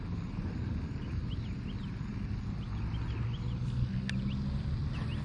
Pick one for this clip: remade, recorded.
recorded